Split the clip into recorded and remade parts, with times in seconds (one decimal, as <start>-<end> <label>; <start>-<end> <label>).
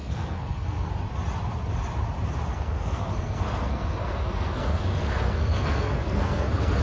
0.0-0.9 remade; 0.9-2.5 recorded; 2.5-6.8 remade